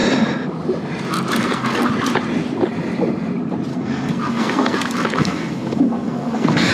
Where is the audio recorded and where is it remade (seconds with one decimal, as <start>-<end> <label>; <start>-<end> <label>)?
0.0-1.4 recorded; 1.4-1.9 remade; 1.9-3.7 recorded; 3.7-6.7 remade